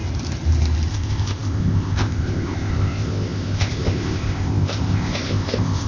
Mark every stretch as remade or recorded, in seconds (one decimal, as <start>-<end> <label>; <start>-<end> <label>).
0.0-0.9 recorded; 0.9-5.9 remade